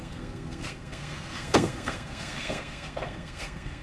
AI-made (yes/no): yes